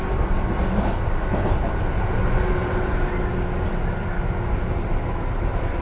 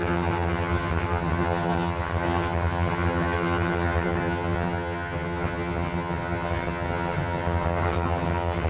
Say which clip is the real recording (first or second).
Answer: first